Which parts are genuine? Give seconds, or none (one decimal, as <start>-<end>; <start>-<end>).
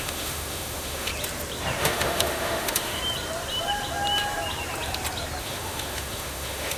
1.1-1.8; 3.0-5.4